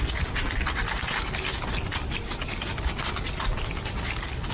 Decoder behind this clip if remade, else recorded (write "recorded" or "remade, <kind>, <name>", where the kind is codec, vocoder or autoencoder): recorded